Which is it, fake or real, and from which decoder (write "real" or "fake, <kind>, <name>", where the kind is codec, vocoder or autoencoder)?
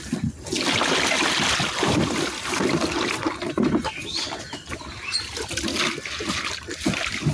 real